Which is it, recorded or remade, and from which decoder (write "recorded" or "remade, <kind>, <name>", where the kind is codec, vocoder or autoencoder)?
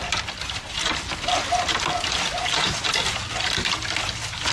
recorded